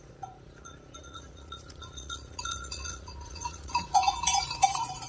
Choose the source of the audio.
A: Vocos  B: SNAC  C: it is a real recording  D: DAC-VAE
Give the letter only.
A